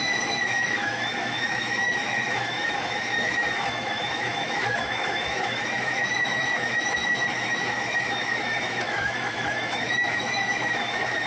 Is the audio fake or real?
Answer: fake